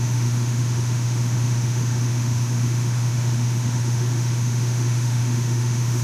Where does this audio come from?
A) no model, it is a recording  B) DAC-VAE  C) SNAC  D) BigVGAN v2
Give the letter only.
B